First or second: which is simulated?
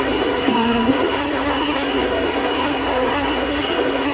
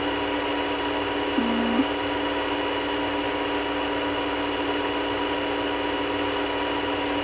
first